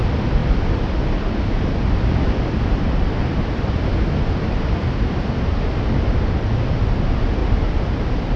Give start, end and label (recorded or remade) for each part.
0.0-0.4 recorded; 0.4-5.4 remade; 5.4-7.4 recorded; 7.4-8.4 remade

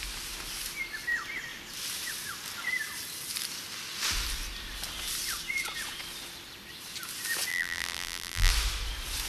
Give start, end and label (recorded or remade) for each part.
0.0-7.5 recorded; 7.5-8.5 remade; 8.5-9.3 recorded

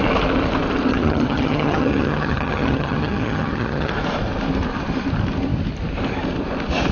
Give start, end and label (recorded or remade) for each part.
0.0-0.9 recorded; 0.9-3.9 remade; 3.9-6.9 recorded